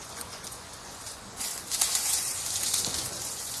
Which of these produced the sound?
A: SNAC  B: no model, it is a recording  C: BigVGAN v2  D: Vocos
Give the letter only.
D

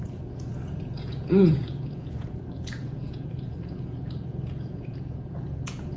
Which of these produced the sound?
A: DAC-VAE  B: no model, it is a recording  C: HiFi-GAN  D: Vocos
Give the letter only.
D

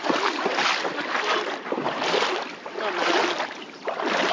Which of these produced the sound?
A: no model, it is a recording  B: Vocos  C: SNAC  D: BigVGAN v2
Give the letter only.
A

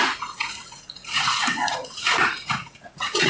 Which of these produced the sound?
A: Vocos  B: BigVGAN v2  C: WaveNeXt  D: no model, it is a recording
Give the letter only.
A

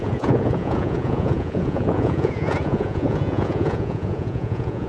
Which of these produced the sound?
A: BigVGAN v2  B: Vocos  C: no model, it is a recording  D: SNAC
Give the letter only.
B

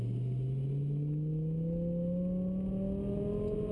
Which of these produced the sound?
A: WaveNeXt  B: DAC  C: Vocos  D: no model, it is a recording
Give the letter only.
D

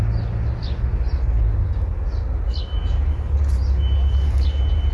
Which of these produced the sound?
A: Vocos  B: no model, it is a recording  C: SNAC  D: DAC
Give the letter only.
B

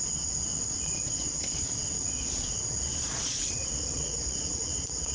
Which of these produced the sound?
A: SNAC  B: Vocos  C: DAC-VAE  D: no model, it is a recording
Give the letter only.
B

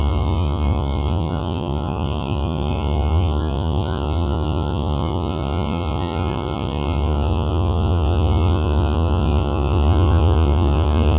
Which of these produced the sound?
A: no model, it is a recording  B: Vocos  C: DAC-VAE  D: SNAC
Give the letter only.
B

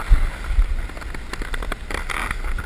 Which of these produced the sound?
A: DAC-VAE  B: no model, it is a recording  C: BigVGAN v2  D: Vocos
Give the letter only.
B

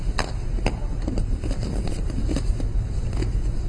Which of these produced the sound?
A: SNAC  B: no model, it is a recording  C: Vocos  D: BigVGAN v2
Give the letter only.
B